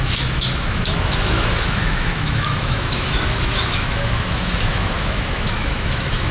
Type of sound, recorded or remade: remade